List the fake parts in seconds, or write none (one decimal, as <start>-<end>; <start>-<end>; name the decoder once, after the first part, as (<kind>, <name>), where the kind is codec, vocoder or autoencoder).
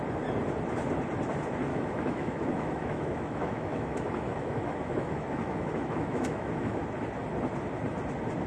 1.7-6.8 (autoencoder, DAC-VAE)